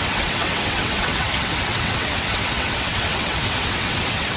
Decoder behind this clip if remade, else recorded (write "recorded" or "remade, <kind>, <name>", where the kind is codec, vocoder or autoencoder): remade, vocoder, WaveNeXt